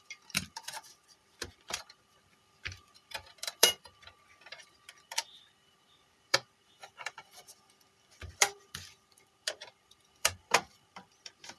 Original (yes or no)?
no